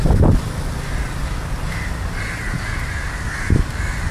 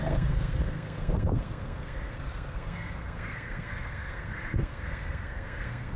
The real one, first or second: first